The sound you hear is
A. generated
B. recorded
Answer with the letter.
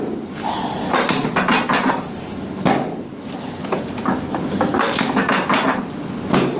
B